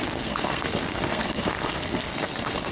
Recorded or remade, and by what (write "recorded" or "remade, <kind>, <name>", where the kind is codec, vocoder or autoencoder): remade, codec, SNAC